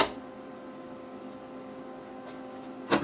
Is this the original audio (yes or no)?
yes